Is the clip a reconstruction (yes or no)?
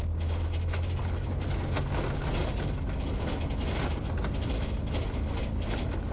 no